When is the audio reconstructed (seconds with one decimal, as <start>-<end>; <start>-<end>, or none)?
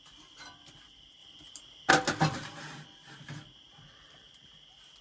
none